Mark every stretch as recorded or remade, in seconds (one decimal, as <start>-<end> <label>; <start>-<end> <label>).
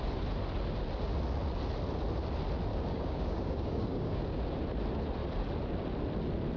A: 0.0-2.7 recorded; 2.7-4.2 remade; 4.2-6.6 recorded